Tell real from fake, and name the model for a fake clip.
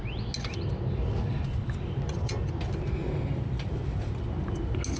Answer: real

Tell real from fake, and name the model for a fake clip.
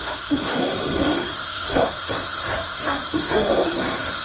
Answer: fake, codec, SNAC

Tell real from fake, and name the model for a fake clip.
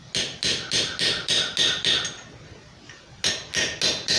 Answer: real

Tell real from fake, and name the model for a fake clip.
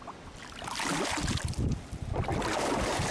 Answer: real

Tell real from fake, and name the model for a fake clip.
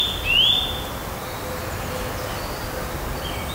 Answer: real